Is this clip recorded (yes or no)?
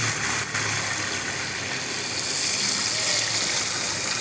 yes